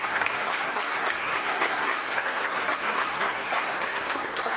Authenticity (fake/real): fake